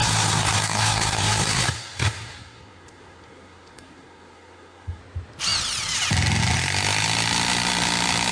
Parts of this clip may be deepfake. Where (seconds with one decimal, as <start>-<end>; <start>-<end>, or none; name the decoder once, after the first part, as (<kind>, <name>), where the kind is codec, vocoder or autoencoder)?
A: 0.0-5.0 (codec, SNAC)

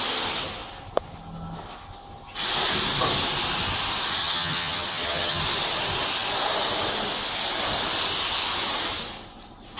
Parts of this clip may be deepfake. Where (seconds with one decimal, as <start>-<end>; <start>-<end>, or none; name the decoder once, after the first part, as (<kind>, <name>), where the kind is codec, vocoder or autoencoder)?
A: 4.2-5.4 (vocoder, HiFi-GAN)

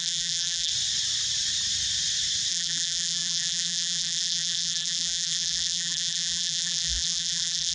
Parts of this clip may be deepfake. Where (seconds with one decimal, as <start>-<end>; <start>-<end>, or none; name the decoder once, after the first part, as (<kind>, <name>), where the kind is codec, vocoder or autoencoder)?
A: 0.0-0.7 (vocoder, BigVGAN v2); 2.5-7.7

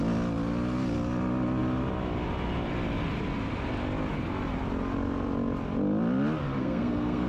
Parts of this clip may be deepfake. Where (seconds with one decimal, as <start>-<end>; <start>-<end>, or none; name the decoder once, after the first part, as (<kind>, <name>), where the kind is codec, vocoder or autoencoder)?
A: 6.6-7.3 (codec, SNAC)

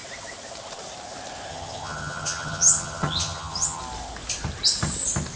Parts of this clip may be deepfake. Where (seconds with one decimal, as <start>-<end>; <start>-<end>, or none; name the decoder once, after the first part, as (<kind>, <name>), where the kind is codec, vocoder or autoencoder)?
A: 1.5-3.8 (vocoder, HiFi-GAN)

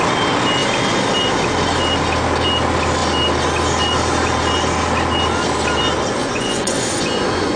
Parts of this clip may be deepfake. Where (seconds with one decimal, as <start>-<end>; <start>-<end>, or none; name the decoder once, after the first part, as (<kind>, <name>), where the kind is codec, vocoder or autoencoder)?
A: 6.2-7.6 (vocoder, Vocos)

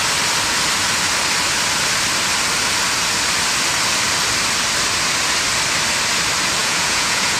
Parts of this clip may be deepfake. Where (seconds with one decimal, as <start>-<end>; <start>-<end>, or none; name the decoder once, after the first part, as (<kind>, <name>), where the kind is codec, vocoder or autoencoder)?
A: 6.6-7.4 (vocoder, Vocos)

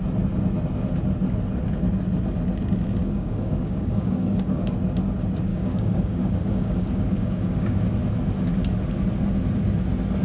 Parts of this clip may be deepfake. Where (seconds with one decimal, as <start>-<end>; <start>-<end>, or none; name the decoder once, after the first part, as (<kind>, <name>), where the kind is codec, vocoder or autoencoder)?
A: 3.0-4.7 (codec, DAC); 5.5-7.8